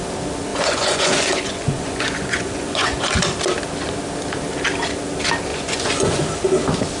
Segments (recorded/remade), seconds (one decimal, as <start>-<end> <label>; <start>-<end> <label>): 0.0-0.5 recorded; 0.5-3.1 remade; 3.1-5.5 recorded; 5.5-6.2 remade; 6.2-7.0 recorded